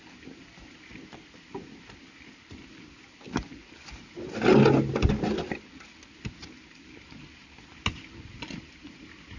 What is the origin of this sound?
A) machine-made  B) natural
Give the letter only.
B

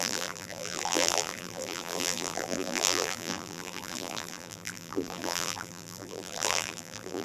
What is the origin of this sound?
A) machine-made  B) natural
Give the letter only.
A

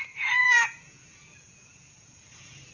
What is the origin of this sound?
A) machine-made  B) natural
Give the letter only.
A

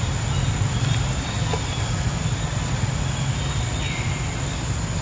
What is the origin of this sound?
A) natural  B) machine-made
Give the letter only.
A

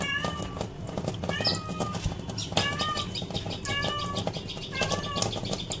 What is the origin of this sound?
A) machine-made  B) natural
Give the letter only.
B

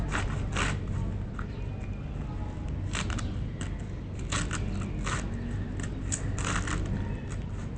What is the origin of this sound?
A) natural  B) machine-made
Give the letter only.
A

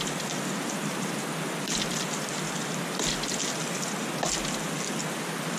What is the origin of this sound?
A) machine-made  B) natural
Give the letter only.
B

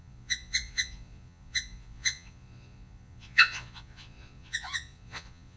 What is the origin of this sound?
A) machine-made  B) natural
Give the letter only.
A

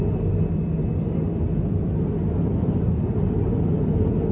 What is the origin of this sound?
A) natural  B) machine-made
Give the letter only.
A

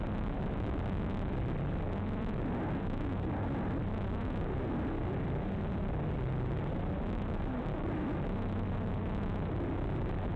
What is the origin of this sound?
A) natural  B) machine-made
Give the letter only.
A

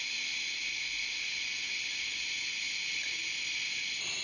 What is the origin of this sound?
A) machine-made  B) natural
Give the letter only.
B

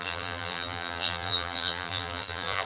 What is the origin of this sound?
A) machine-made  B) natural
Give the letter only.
A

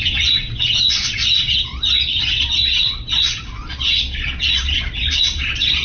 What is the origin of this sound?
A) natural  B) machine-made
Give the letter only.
B